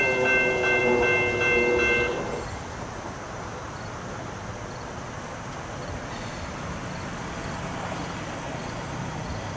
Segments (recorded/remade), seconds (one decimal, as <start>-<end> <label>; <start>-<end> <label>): 0.0-9.6 recorded